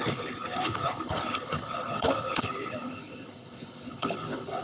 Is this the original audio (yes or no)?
no